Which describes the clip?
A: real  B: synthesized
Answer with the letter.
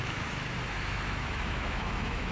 B